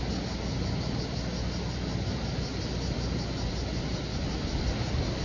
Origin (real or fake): real